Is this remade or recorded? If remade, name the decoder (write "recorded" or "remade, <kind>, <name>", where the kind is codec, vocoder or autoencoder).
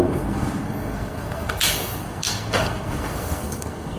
remade, codec, SNAC